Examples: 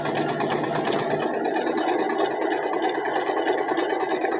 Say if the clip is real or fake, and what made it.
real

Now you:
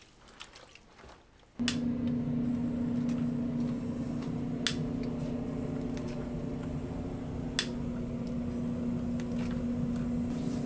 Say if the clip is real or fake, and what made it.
real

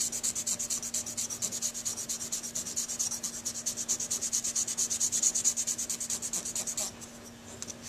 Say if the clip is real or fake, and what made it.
real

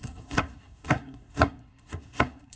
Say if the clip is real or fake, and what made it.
fake, codec, SNAC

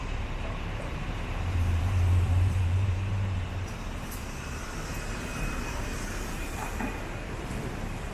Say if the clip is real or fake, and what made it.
fake, vocoder, BigVGAN v2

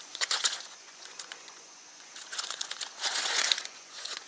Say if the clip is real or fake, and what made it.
fake, vocoder, Vocos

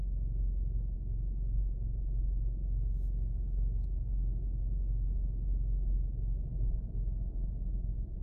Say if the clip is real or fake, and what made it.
real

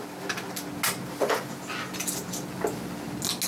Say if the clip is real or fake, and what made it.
real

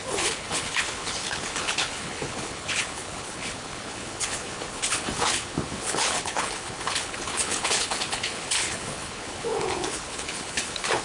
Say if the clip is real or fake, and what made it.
fake, codec, HILCodec